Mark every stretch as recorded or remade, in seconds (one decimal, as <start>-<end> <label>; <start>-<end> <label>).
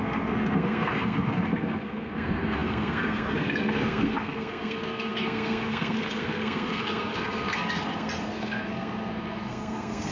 0.0-10.1 remade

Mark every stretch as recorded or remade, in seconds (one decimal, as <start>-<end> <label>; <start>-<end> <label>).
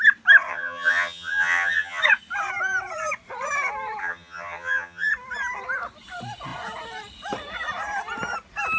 0.0-0.5 recorded; 0.5-2.0 remade; 2.0-4.0 recorded; 4.0-5.1 remade; 5.1-8.8 recorded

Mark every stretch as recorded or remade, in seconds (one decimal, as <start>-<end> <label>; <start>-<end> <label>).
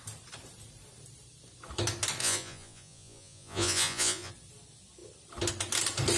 0.0-2.2 recorded; 2.2-4.3 remade; 4.3-6.2 recorded